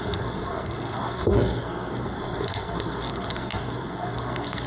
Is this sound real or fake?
fake